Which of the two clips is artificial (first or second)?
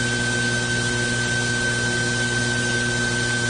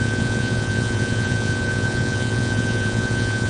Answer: second